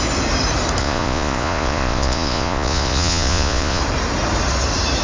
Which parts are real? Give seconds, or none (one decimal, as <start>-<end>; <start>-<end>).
0.0-0.8; 3.8-5.0